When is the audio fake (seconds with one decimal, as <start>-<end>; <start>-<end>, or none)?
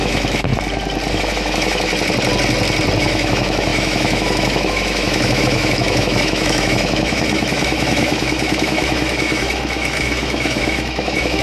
0.0-0.5; 1.1-1.9; 3.0-11.4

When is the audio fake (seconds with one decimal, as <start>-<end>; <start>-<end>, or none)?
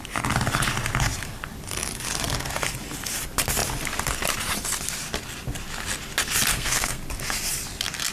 6.5-7.0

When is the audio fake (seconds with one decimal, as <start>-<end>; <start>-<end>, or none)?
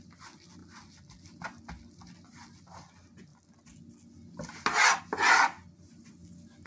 none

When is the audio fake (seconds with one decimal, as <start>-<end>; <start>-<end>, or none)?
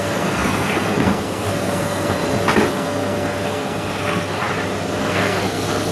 0.0-2.2; 2.7-4.4; 5.0-5.9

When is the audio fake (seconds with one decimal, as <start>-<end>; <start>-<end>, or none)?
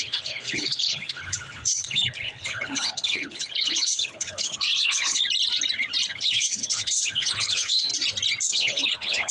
0.0-5.2; 6.1-7.9; 8.5-9.3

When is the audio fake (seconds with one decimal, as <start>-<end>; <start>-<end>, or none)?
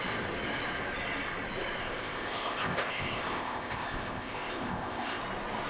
1.8-5.2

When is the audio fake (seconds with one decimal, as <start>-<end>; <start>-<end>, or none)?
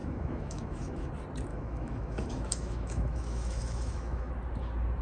0.0-1.1; 1.5-4.3